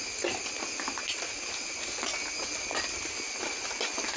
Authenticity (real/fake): real